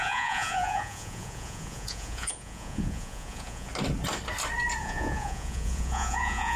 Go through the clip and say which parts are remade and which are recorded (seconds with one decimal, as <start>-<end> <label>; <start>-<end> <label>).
0.0-3.7 remade; 3.7-4.8 recorded; 4.8-6.6 remade